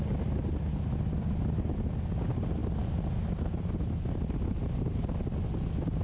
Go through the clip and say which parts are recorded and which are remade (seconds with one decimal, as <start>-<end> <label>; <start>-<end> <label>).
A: 0.0-6.0 recorded